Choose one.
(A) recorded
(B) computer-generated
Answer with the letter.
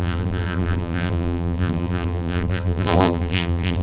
B